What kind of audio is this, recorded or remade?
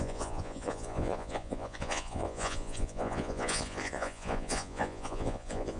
remade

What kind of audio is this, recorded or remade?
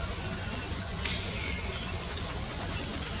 remade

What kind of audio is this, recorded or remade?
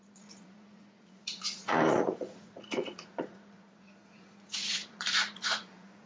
remade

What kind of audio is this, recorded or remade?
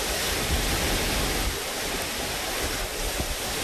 recorded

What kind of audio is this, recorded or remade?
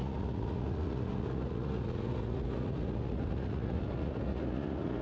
remade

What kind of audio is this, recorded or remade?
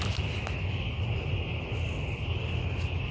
recorded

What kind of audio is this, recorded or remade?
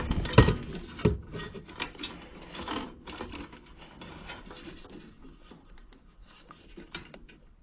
recorded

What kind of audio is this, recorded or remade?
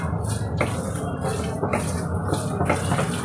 recorded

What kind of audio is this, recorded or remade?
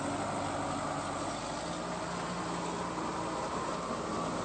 recorded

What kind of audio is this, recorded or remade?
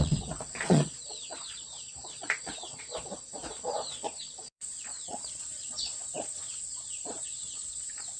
remade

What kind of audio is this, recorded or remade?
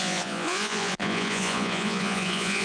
remade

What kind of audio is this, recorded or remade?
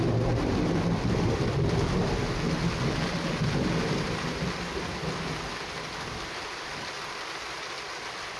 recorded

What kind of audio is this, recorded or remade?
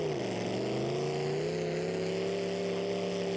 recorded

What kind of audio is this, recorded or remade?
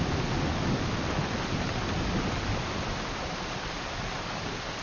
recorded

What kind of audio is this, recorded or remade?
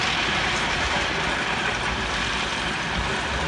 recorded